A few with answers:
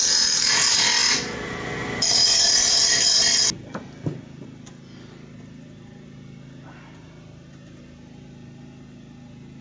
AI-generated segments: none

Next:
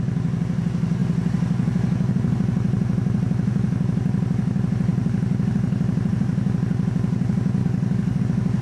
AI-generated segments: 7.6-8.2 (codec, DAC)

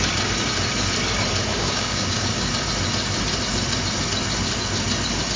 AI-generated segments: 1.5-2.5 (codec, DAC)

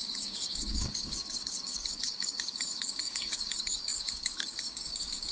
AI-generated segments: 0.0-5.3 (codec, DAC)

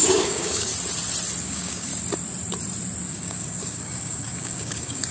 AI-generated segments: 0.0-0.7 (codec, DAC); 1.4-1.9; 3.1-5.1